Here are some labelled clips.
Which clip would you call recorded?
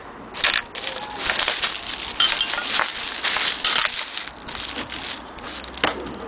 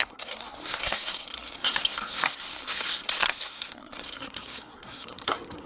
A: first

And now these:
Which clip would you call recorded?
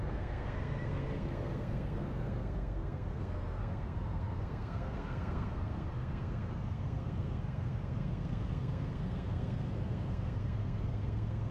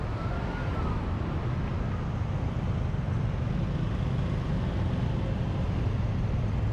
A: second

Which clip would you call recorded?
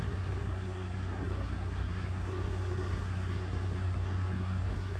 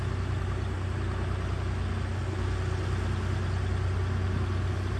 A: second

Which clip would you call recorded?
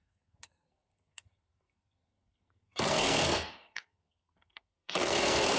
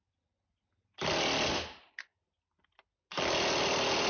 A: second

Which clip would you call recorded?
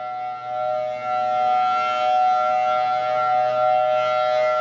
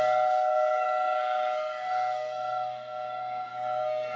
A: first